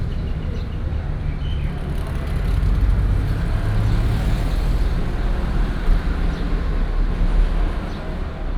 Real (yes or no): yes